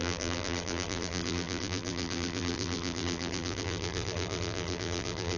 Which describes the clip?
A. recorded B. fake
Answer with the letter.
B